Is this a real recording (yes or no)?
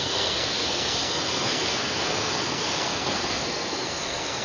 no